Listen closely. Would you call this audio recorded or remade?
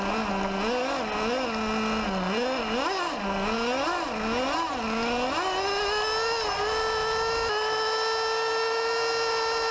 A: recorded